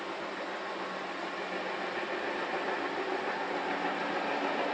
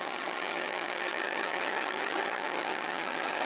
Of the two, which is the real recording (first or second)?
first